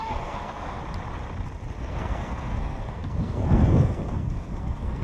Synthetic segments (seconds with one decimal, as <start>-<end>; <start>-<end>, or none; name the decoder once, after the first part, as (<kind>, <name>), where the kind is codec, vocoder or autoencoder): 0.0-0.8 (codec, SNAC); 1.8-5.0